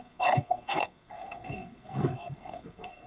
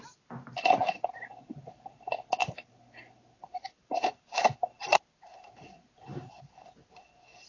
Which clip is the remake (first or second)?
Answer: first